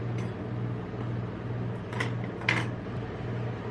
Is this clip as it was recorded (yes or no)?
yes